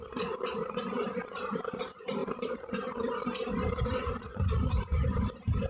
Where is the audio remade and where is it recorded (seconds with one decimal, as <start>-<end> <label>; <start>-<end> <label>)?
0.0-5.7 remade